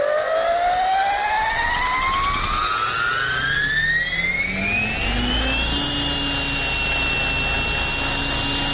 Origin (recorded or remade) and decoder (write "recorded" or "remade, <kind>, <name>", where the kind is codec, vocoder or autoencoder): recorded